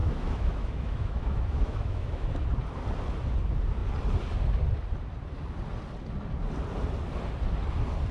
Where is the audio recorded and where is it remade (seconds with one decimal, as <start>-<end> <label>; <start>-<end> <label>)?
0.0-2.3 remade; 2.3-8.1 recorded

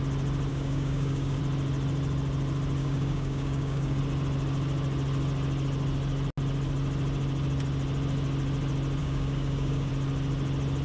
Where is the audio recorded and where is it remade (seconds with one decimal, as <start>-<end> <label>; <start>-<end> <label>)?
0.0-0.5 recorded; 0.5-1.4 remade; 1.4-2.8 recorded; 2.8-4.0 remade; 4.0-9.0 recorded; 9.0-9.9 remade; 9.9-10.8 recorded